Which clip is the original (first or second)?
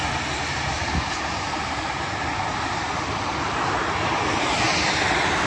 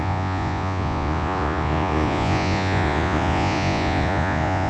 first